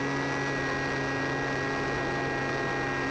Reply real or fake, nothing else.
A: real